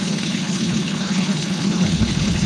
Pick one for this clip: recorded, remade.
remade